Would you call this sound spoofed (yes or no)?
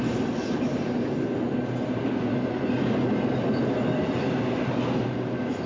no